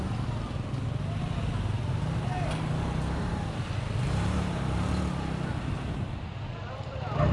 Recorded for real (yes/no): yes